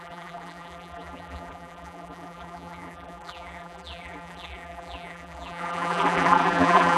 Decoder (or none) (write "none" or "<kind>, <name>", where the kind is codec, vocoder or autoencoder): vocoder, BigVGAN v2